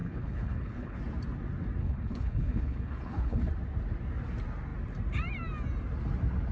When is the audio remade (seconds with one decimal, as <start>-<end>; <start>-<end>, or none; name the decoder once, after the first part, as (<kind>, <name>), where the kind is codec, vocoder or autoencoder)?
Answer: 0.0-1.0 (codec, HILCodec); 1.8-3.5